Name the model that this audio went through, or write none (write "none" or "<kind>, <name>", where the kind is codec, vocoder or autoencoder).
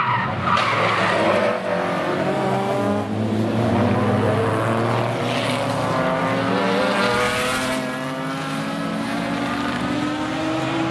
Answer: none